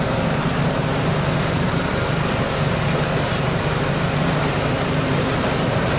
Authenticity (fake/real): fake